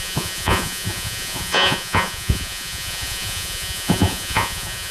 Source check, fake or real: fake